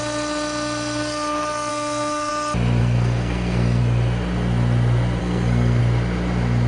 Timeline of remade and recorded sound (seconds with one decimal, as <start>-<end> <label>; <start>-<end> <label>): 0.0-1.7 recorded; 1.7-2.3 remade; 2.3-2.8 recorded; 2.8-3.8 remade; 3.8-5.2 recorded; 5.2-5.8 remade; 5.8-6.7 recorded